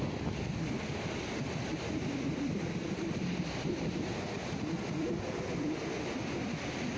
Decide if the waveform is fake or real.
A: real